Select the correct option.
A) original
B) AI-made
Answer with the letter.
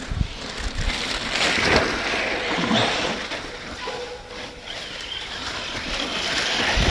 A